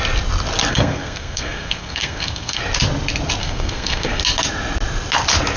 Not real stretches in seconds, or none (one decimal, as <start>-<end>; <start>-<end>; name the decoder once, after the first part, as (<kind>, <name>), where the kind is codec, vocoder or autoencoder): 0.7-2.6 (codec, SNAC); 3.4-4.2